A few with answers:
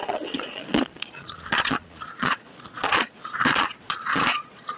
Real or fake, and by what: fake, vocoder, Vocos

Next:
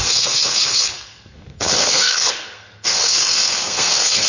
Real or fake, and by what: fake, codec, SNAC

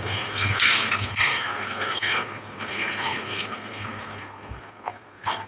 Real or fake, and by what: fake, codec, SNAC